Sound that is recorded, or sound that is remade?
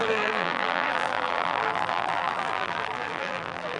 remade